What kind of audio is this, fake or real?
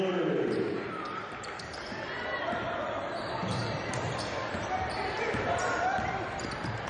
fake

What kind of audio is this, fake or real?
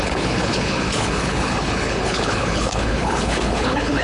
fake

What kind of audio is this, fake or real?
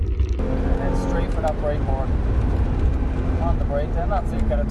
real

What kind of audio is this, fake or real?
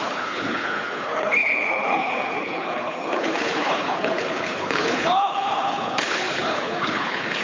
fake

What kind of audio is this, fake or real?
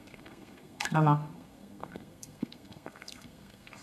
fake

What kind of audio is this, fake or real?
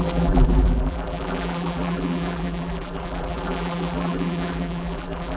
fake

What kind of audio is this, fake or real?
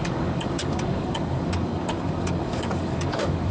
fake